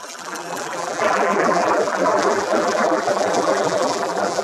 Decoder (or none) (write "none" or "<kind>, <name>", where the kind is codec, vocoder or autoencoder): vocoder, BigVGAN v2